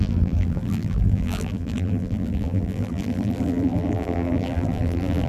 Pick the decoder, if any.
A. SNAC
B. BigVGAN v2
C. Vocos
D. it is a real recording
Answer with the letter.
B